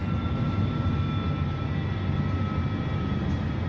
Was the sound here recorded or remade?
recorded